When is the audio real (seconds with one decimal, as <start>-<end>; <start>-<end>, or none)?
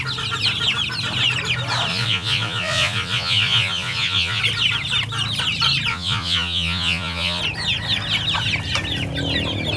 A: 0.0-1.9; 4.4-5.9; 7.4-9.8